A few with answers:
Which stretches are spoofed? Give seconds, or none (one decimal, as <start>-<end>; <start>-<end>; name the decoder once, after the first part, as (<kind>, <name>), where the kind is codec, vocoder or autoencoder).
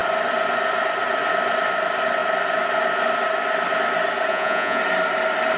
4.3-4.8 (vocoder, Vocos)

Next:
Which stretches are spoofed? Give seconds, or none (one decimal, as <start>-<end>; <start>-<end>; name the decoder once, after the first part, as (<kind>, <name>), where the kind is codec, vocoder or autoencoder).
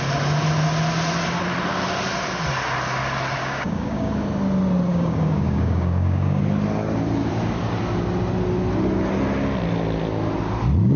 3.4-4.2 (codec, DAC); 4.9-6.4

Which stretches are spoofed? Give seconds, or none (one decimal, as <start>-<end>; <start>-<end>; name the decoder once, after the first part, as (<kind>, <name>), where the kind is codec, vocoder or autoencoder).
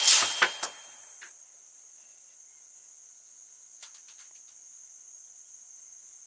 none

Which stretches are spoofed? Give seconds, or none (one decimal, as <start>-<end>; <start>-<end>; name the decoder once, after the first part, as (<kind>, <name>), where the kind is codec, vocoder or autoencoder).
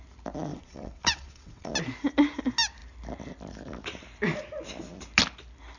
0.5-1.7 (vocoder, WaveNeXt)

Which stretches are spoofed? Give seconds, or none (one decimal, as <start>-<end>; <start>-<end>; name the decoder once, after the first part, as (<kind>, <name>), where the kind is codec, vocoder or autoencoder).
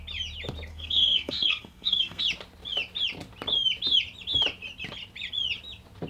0.7-2.2 (codec, SNAC)